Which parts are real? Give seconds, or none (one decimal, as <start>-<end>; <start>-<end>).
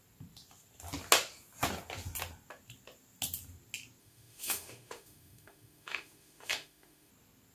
0.0-4.0; 7.1-7.5